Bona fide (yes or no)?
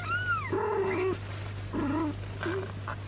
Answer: yes